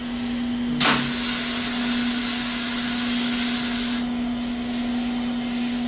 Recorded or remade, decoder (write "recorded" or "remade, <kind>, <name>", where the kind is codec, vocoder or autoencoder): recorded